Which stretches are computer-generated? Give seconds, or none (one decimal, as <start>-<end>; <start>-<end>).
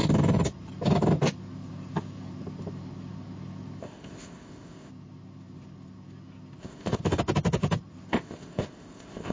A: 3.8-4.9; 6.6-7.0; 8.1-9.3